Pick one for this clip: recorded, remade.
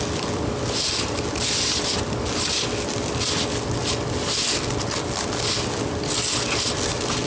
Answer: recorded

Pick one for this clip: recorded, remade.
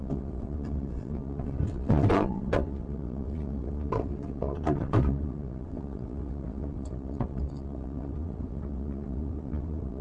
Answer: remade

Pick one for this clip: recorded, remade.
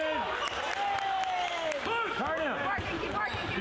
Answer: recorded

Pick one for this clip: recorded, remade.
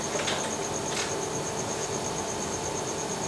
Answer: recorded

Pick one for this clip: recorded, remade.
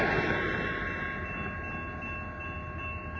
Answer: recorded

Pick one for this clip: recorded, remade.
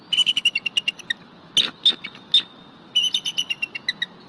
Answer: recorded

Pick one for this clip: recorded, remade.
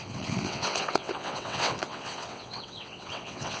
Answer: remade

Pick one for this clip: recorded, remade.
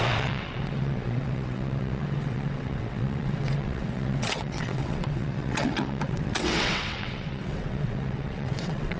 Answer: remade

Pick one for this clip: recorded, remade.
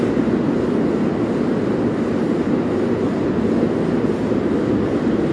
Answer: recorded